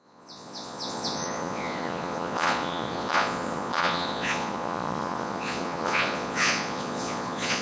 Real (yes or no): no